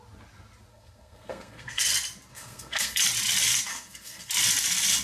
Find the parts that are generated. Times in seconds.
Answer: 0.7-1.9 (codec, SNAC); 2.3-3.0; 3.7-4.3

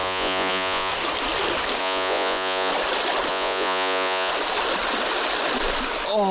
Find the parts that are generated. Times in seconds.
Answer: 0.0-0.9 (vocoder, Vocos); 1.8-2.7; 3.3-4.3

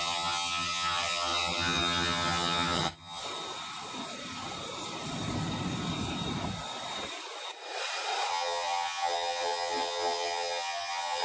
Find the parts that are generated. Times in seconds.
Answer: 0.0-3.2 (vocoder, HiFi-GAN); 8.3-11.2

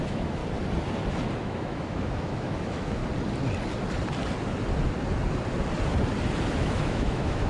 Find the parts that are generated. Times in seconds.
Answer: 0.0-0.4 (autoencoder, DAC-VAE); 1.4-3.0; 6.5-7.5

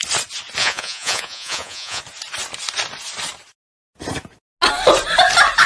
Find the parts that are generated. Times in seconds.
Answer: 0.6-2.0 (vocoder, Vocos)

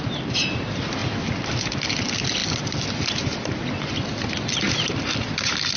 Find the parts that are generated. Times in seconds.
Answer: none

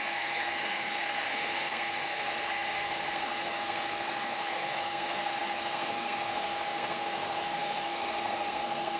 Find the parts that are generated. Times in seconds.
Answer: 0.0-9.0 (codec, SNAC)

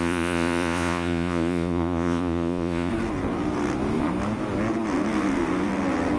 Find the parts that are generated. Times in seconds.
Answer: 0.0-2.9 (vocoder, Vocos)